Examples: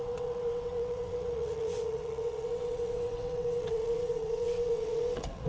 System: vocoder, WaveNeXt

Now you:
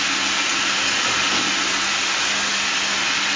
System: none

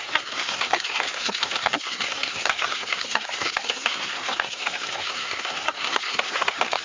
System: codec, SNAC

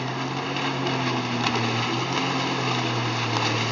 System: none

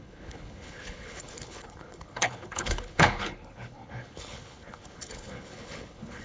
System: codec, HILCodec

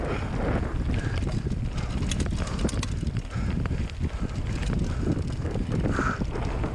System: none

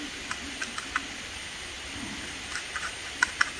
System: none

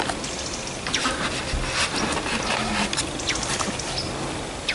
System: none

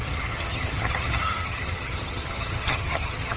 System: vocoder, HiFi-GAN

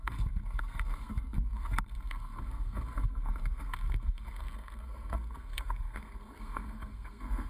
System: codec, SNAC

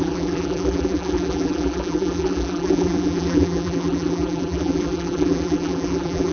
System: vocoder, BigVGAN v2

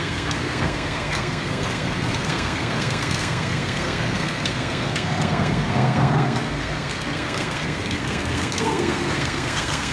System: codec, SNAC